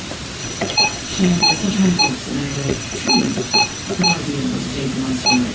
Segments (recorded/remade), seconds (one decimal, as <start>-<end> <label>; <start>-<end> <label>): 0.0-0.4 recorded; 0.4-2.0 remade; 2.0-2.5 recorded; 2.5-4.0 remade; 4.0-5.5 recorded